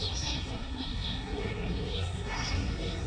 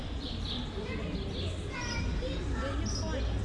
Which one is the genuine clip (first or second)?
second